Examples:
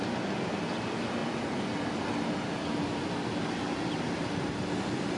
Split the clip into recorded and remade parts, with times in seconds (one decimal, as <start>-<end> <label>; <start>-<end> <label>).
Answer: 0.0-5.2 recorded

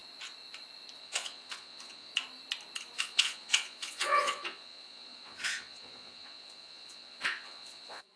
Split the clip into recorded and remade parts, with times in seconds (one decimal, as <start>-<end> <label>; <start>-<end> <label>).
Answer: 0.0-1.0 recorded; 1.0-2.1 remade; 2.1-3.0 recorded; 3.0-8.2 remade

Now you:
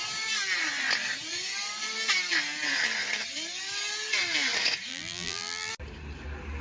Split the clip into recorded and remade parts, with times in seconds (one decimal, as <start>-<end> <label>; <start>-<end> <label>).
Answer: 0.0-4.9 recorded; 4.9-5.7 remade; 5.7-6.6 recorded